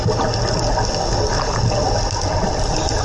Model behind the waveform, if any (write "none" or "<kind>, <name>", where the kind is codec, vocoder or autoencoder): none